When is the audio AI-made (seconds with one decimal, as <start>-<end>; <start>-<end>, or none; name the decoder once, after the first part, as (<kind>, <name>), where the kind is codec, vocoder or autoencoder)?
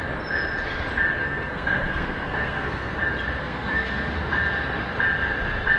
1.2-2.9 (codec, SNAC); 3.4-4.2